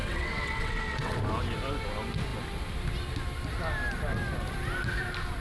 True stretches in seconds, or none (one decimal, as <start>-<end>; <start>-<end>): 1.2-5.4